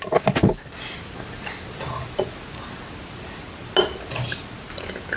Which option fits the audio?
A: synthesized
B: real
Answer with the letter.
B